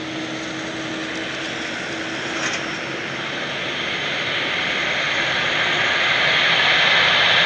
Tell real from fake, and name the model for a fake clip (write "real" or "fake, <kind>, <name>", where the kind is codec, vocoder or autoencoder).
real